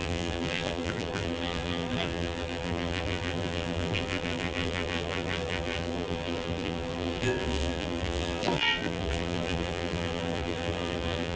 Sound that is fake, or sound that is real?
fake